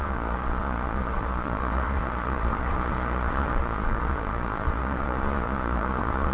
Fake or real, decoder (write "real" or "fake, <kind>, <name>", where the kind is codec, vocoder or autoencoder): fake, vocoder, Vocos